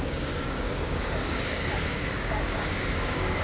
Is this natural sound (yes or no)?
no